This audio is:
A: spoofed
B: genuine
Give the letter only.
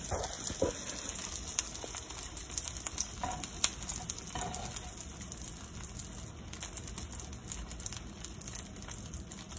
B